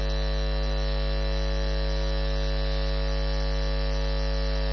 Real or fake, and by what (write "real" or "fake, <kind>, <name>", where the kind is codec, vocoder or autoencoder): real